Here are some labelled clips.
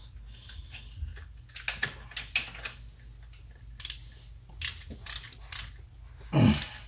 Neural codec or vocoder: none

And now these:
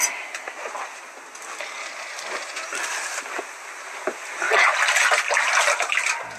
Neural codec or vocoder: none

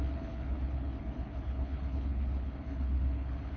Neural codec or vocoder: codec, HILCodec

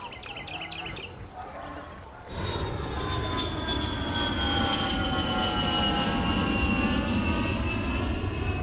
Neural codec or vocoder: none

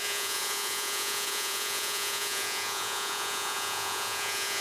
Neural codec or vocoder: vocoder, Vocos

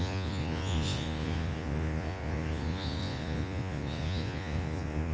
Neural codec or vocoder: vocoder, Vocos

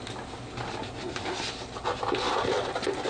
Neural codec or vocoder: none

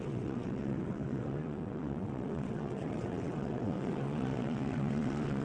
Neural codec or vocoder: vocoder, WaveNeXt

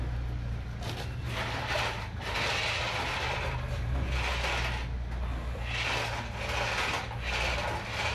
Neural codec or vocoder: none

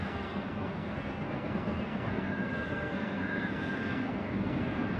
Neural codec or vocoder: codec, SNAC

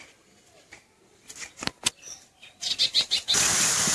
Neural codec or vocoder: none